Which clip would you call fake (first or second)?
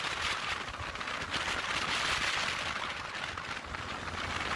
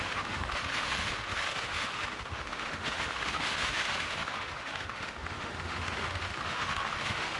second